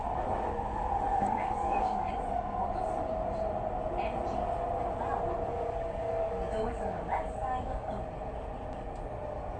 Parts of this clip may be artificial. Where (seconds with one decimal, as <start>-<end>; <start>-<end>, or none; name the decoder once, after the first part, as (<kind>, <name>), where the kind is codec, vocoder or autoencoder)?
1.1-2.1 (codec, DAC); 5.5-8.1